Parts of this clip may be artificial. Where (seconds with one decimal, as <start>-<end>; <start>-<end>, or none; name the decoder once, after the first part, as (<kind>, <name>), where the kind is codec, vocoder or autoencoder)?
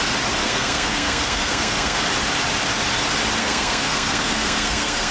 0.4-2.1 (codec, SNAC); 3.4-5.1